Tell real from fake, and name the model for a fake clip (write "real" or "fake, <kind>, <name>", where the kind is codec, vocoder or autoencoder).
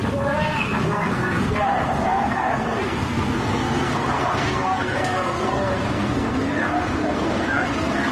fake, codec, SNAC